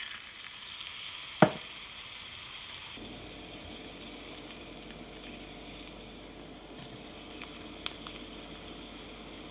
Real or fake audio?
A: real